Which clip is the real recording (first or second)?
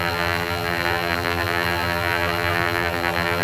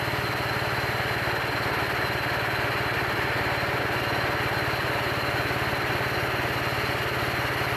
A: second